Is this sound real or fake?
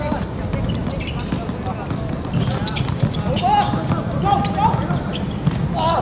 real